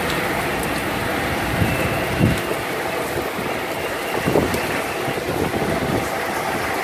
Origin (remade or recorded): recorded